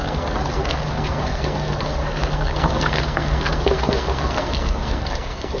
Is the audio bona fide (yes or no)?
no